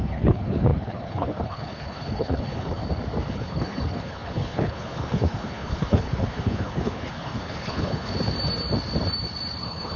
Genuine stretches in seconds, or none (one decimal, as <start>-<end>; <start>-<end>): 2.8-3.3; 8.1-9.6